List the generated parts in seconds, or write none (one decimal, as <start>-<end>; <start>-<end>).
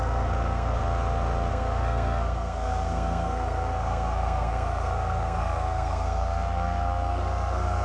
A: 0.0-0.8; 1.5-7.8